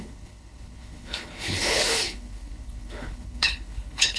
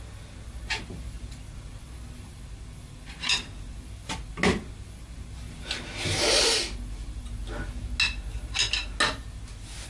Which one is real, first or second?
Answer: second